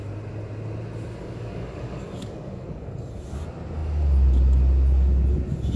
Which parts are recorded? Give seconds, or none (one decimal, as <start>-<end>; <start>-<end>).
0.0-1.2; 3.4-5.8